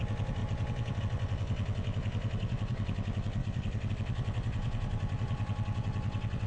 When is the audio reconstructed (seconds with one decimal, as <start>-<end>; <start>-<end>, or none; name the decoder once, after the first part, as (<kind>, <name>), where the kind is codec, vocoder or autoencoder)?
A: 0.0-6.5 (vocoder, WaveNeXt)